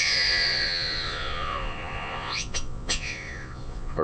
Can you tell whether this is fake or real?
fake